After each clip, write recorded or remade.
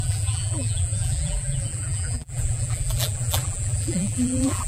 remade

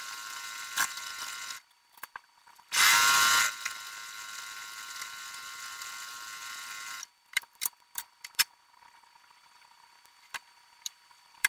remade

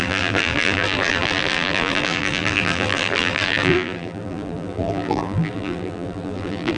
remade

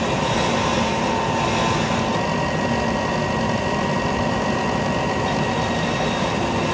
recorded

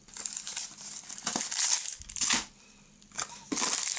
recorded